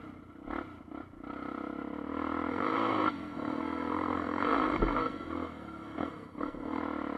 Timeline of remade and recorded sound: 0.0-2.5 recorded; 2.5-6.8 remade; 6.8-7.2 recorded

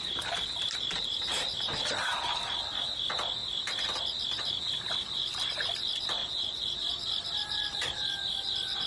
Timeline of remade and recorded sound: 0.0-6.2 recorded; 6.2-6.8 remade; 6.8-8.9 recorded

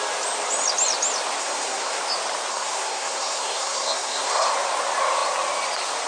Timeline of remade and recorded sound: 0.0-1.4 recorded; 1.4-2.0 remade; 2.0-2.5 recorded; 2.5-4.5 remade; 4.5-6.1 recorded

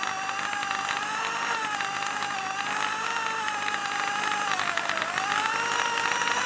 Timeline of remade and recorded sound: 0.0-6.5 recorded

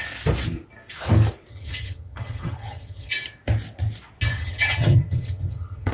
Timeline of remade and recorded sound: 0.0-1.5 recorded; 1.5-3.1 remade; 3.1-4.3 recorded; 4.3-5.9 remade